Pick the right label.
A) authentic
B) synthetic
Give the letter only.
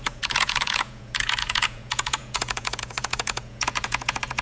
B